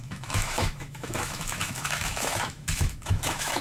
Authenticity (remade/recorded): remade